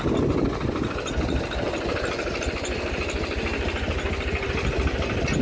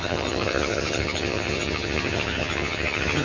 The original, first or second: first